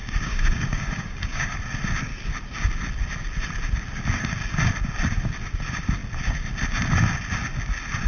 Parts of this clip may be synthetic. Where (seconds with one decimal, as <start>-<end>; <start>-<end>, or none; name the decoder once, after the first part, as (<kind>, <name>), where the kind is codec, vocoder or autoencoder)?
0.0-1.6 (codec, DAC)